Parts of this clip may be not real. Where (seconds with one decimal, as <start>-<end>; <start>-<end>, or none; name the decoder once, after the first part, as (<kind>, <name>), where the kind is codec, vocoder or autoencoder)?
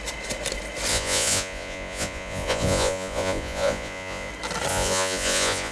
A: 0.9-4.3 (vocoder, Vocos); 4.7-5.7